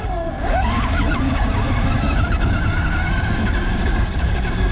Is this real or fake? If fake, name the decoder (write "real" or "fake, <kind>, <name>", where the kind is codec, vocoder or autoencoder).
fake, codec, DAC